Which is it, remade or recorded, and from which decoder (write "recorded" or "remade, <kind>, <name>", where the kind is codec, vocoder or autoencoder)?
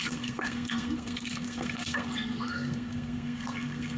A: remade, codec, SNAC